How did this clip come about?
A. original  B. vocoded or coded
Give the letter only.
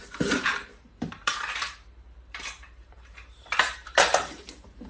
B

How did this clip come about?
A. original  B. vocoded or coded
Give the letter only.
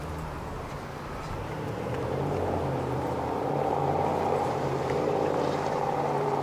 B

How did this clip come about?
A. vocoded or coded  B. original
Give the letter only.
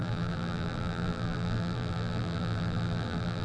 A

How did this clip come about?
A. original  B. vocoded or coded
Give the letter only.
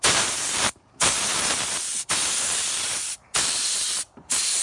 B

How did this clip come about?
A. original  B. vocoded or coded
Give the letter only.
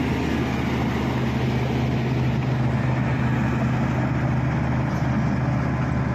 A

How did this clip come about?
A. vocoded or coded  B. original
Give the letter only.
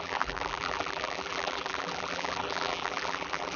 A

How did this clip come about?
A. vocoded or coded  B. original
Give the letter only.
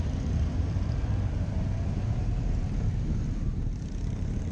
A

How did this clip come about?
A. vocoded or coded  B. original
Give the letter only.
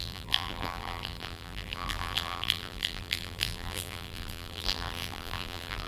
A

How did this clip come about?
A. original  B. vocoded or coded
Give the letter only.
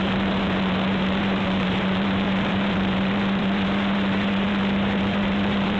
B